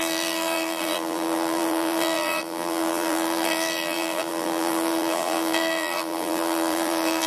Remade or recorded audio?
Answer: remade